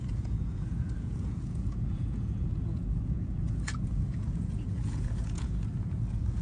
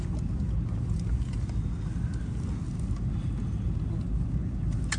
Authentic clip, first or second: second